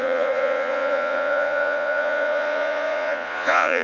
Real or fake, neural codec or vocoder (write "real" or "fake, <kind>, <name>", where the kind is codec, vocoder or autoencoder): fake, vocoder, Vocos